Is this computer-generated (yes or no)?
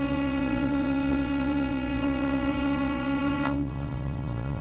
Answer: yes